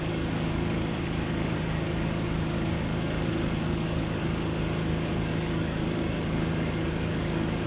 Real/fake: fake